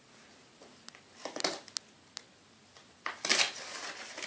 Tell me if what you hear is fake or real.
real